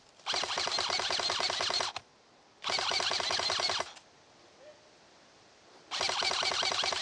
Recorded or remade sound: recorded